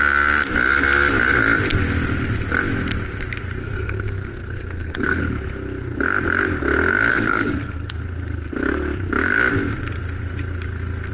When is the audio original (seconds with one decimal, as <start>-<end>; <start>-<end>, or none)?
0.0-3.6; 5.2-7.1; 8.0-11.1